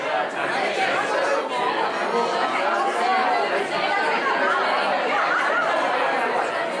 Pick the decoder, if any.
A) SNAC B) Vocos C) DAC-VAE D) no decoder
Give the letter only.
D